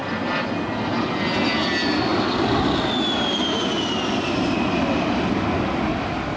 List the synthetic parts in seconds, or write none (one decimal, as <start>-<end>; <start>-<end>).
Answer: none